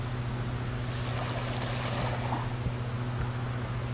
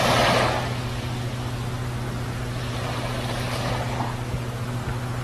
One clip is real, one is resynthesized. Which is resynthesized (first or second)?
second